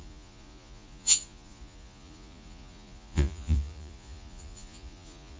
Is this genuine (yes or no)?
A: no